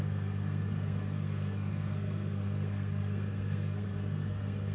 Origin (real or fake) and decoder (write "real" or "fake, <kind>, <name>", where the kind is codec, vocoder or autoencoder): fake, codec, SNAC